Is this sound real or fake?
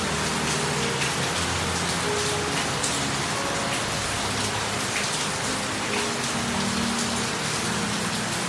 real